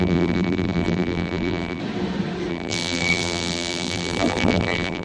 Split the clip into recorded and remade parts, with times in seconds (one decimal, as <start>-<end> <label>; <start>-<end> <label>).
0.0-1.8 remade; 1.8-2.5 recorded; 2.5-5.0 remade